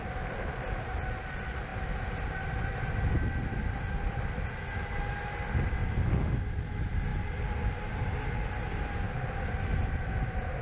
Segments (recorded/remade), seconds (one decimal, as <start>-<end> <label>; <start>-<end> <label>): 0.0-5.8 recorded; 5.8-6.4 remade; 6.4-10.6 recorded